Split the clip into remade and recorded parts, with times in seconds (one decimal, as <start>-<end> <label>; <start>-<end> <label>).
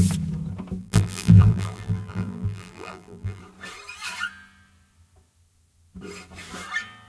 0.0-0.8 recorded; 0.8-3.4 remade; 3.4-7.1 recorded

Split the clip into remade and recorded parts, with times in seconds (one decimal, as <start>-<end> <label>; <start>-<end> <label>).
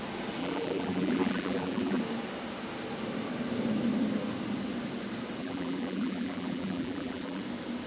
0.0-0.4 recorded; 0.4-2.0 remade; 2.0-5.4 recorded; 5.4-7.4 remade; 7.4-7.9 recorded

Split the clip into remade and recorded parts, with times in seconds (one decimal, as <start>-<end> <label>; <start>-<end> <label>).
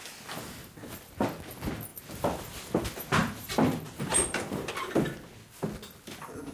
0.0-3.2 recorded; 3.2-4.7 remade; 4.7-6.5 recorded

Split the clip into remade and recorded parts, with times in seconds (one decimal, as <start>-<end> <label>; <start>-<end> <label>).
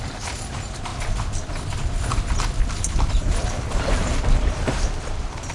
0.0-0.9 remade; 0.9-3.1 recorded; 3.1-5.5 remade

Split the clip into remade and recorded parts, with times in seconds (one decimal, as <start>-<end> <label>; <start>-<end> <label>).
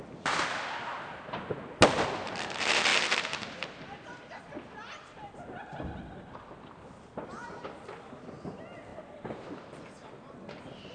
0.0-2.9 recorded; 2.9-6.7 remade; 6.7-8.9 recorded; 8.9-9.9 remade; 9.9-10.9 recorded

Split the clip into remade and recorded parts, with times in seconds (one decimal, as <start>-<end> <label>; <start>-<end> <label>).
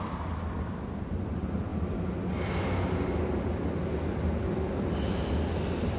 0.0-6.0 recorded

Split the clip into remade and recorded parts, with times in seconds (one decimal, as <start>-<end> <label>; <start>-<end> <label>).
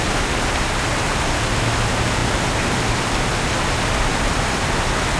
0.0-4.1 recorded; 4.1-4.7 remade; 4.7-5.2 recorded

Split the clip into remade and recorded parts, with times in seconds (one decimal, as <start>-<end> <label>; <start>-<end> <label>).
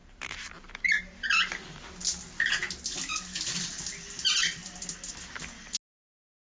0.0-1.0 remade; 1.0-4.6 recorded; 4.6-5.1 remade; 5.1-6.6 recorded